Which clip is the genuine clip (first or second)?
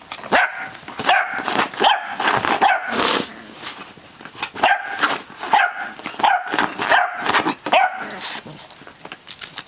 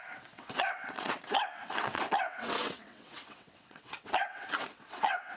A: first